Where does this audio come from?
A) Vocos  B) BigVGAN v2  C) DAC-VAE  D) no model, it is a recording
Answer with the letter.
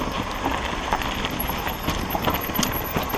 D